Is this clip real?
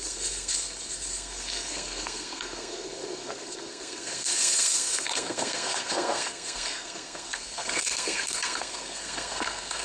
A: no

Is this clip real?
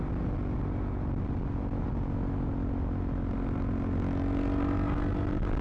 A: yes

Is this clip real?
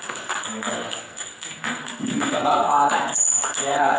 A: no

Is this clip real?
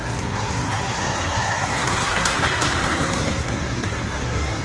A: no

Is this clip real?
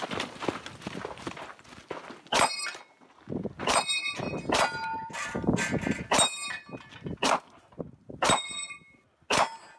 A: yes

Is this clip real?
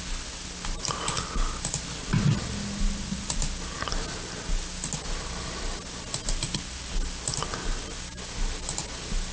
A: yes